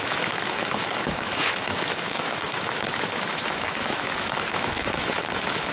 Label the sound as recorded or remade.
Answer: remade